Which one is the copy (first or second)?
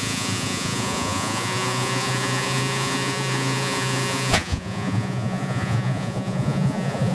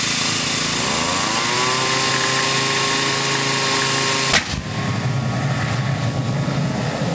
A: first